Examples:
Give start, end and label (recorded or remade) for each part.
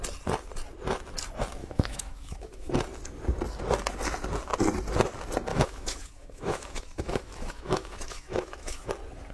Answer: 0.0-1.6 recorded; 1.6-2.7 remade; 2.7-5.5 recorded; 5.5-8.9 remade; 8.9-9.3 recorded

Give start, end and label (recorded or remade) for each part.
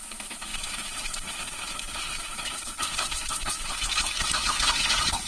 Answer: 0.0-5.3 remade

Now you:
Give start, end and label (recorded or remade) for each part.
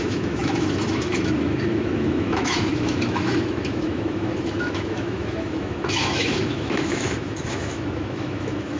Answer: 0.0-8.8 remade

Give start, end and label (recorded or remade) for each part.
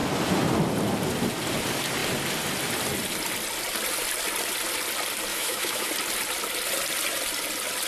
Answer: 0.0-5.3 recorded; 5.3-5.9 remade; 5.9-7.9 recorded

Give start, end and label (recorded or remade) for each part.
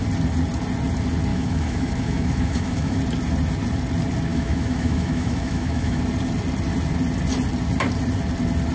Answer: 0.0-1.3 recorded; 1.3-3.0 remade; 3.0-4.3 recorded; 4.3-6.0 remade; 6.0-8.7 recorded